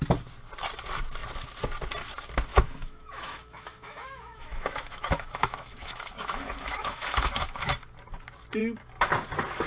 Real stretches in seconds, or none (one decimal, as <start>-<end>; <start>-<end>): 0.0-2.5; 7.7-9.7